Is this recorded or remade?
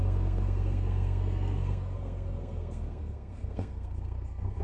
remade